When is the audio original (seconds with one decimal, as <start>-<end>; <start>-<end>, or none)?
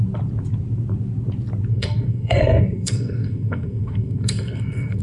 0.0-1.7